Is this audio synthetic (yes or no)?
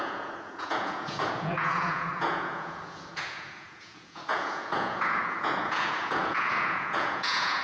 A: yes